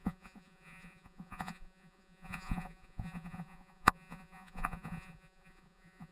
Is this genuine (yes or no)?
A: no